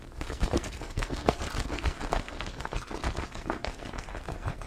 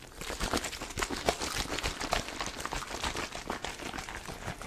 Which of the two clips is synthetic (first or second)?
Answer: first